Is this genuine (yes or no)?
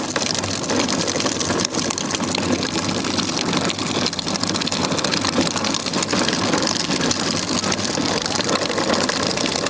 yes